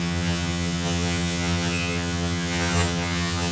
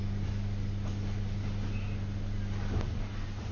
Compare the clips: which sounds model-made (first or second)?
first